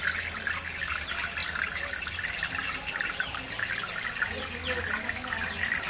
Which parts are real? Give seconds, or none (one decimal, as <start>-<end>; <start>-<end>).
0.0-5.9